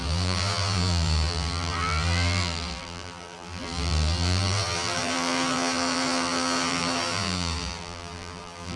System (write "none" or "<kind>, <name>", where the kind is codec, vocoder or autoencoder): vocoder, BigVGAN v2